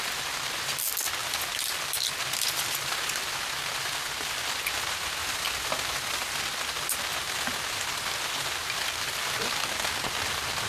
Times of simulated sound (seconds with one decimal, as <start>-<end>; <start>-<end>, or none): 1.2-1.9; 5.2-6.4; 7.1-7.6